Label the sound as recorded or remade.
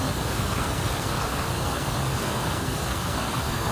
remade